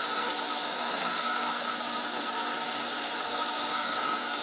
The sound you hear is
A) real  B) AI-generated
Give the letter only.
B